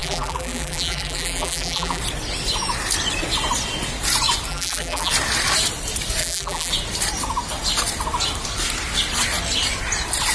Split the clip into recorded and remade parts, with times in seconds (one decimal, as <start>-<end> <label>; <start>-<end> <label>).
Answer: 0.0-2.0 remade; 2.0-4.5 recorded; 4.5-5.1 remade; 5.1-6.2 recorded; 6.2-6.7 remade; 6.7-10.3 recorded